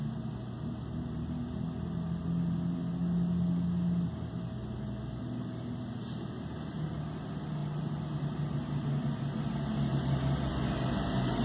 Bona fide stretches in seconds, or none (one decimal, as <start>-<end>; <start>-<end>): 0.0-11.4